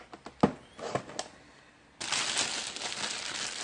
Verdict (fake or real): real